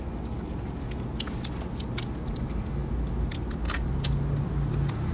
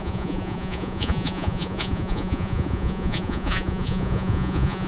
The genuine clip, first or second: first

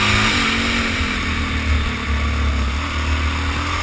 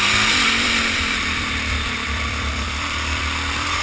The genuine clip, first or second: first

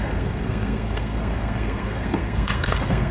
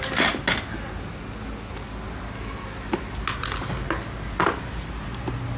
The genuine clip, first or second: second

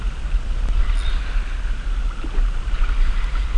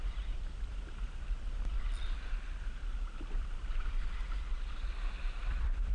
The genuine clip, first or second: first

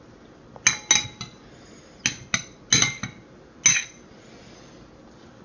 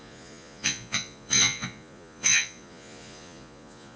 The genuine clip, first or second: first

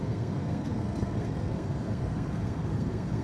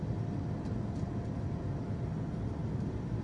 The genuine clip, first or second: second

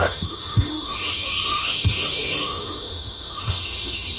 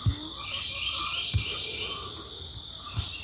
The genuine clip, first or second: second